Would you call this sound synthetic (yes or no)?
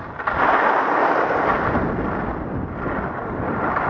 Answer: no